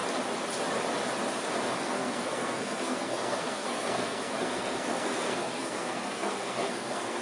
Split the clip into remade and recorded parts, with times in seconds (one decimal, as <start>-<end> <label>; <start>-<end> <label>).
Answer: 0.0-1.8 recorded; 1.8-7.2 remade